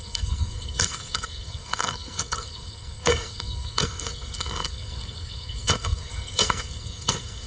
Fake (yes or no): yes